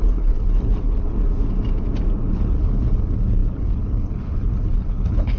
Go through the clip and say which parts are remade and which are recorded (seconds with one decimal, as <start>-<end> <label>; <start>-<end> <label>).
0.0-1.2 remade; 1.2-2.3 recorded; 2.3-5.4 remade